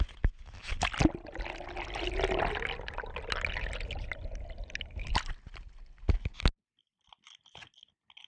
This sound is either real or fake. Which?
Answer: real